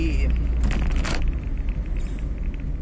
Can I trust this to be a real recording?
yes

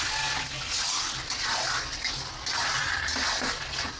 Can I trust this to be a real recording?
yes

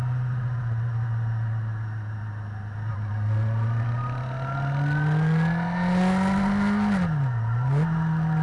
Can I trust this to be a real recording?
yes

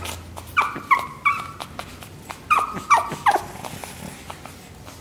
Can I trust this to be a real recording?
yes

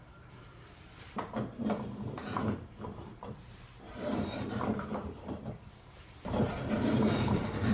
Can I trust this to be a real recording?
no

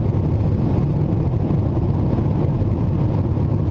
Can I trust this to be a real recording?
yes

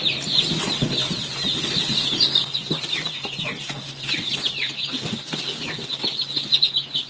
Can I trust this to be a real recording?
no